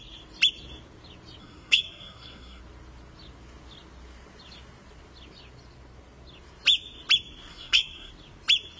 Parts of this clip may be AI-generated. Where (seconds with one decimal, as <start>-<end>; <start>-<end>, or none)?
1.4-2.6; 7.5-8.1